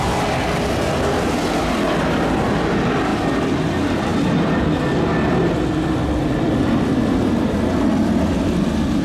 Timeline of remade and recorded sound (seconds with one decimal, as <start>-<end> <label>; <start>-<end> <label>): 0.0-9.0 recorded